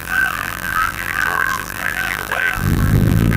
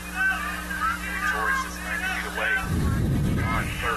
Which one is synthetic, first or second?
first